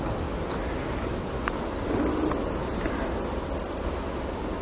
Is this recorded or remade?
recorded